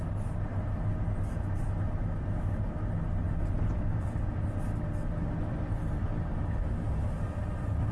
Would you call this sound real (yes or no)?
yes